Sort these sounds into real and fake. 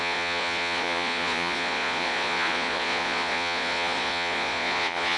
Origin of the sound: fake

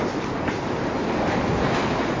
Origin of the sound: real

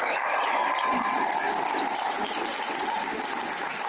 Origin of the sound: real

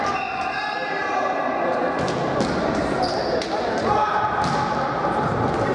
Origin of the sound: real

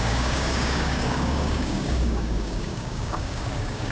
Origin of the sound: fake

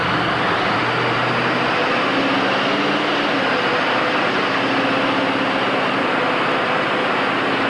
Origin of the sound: real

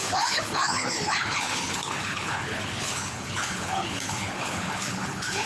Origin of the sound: fake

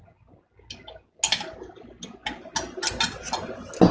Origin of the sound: real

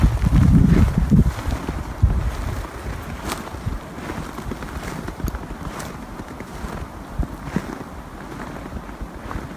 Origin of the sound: real